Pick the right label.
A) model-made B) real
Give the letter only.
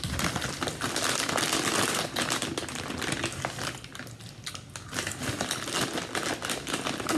B